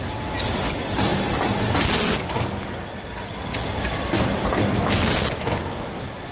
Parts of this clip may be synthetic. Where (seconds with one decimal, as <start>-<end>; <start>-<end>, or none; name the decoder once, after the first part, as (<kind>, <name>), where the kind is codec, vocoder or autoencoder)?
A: none